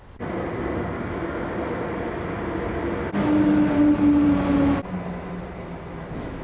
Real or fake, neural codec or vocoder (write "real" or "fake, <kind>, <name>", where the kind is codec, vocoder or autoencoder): real